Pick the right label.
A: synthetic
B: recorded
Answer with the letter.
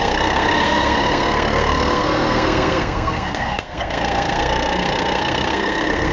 A